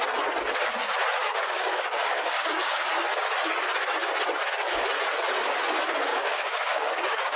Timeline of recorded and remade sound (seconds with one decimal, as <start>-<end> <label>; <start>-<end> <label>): 0.0-1.2 recorded; 1.2-2.9 remade; 2.9-6.1 recorded; 6.1-7.4 remade